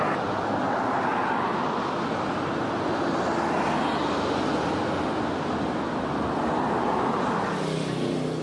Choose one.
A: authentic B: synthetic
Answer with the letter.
A